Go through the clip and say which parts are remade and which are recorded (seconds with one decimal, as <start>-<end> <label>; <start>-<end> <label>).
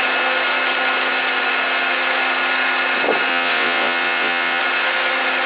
0.0-3.3 recorded; 3.3-4.6 remade; 4.6-5.5 recorded